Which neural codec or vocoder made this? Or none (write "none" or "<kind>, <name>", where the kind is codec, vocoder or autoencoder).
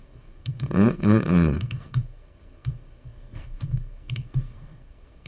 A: codec, SNAC